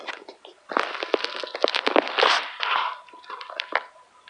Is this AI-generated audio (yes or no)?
yes